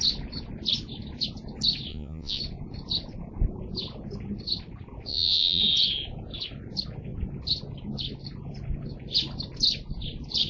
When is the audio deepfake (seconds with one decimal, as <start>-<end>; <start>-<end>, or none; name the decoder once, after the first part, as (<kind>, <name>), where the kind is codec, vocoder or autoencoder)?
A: 1.9-2.4 (vocoder, Vocos); 5.1-5.6